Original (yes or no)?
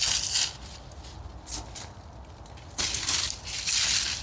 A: yes